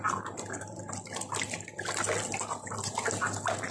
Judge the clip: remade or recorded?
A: recorded